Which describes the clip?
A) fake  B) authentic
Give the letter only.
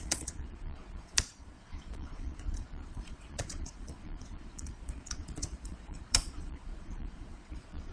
A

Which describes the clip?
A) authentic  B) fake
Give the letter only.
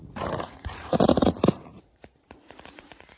B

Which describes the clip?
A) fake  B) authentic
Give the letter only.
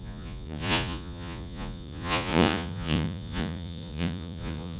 A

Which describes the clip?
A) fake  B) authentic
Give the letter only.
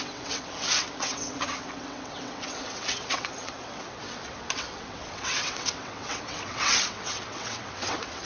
A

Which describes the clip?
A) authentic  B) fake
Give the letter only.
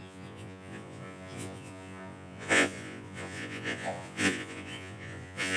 B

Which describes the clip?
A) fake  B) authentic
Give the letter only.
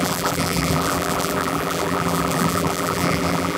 A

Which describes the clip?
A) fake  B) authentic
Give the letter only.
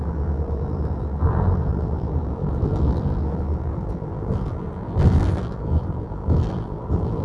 A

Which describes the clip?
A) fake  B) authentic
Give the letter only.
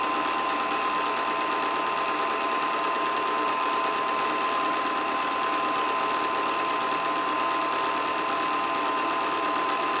B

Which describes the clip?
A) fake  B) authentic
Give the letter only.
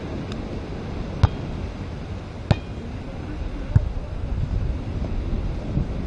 B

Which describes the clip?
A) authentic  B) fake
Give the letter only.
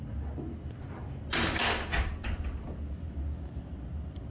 A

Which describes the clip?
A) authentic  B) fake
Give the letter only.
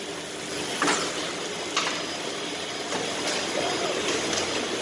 A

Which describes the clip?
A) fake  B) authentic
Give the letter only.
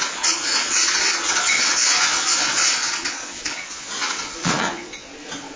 A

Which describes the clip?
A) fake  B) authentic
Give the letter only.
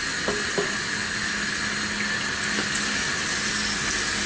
B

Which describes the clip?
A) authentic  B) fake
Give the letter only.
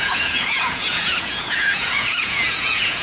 B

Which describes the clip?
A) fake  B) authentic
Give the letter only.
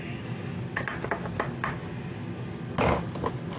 B